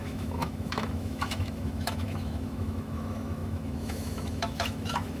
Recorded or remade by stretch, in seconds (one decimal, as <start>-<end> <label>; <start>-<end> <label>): 0.0-5.2 remade